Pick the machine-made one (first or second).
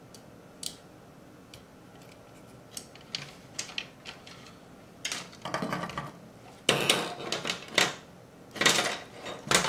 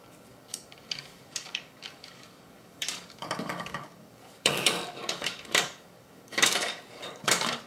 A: second